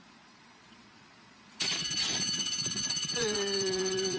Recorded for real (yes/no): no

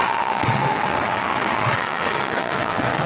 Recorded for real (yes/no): no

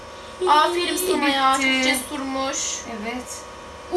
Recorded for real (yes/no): yes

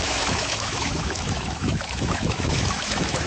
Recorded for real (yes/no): no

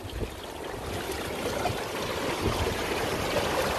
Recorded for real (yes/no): yes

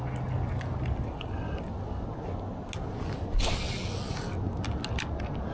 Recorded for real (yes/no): yes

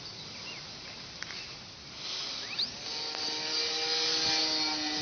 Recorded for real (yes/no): yes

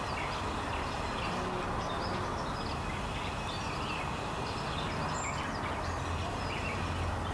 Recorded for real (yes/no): yes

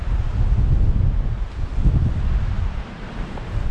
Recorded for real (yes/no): yes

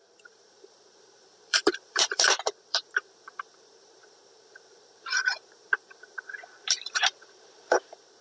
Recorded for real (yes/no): no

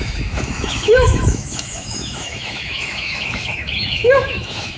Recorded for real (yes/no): no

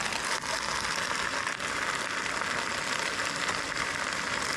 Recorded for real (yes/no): yes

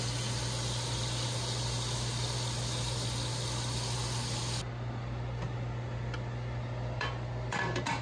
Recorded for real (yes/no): yes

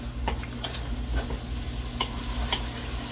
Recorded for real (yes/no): yes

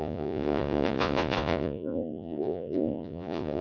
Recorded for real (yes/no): no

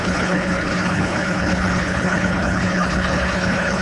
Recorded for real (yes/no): no